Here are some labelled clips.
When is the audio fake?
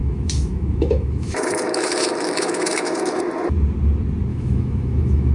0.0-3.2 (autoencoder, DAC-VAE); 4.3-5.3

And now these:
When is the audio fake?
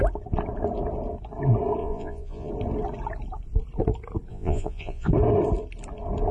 1.8-2.5 (vocoder, Vocos); 4.3-5.1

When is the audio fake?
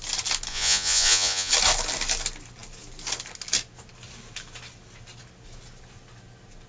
0.5-1.5 (vocoder, Vocos)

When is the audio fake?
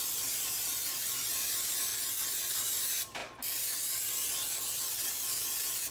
0.0-0.7 (vocoder, BigVGAN v2); 1.3-1.9; 2.5-3.2